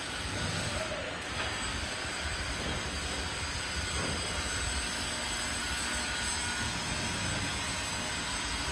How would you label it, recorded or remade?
recorded